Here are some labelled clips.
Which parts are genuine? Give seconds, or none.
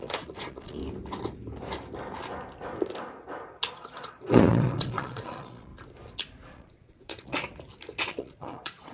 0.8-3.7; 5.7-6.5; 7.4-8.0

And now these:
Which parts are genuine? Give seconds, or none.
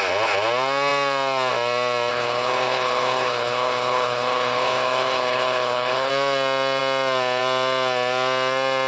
0.0-2.1; 6.1-8.9